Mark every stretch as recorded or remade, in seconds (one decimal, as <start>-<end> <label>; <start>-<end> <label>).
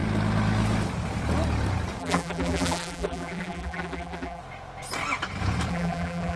0.0-2.0 recorded; 2.0-4.4 remade; 4.4-5.7 recorded; 5.7-6.4 remade